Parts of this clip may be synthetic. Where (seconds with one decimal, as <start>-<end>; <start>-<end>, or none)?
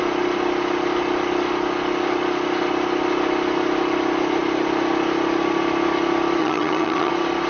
6.4-7.1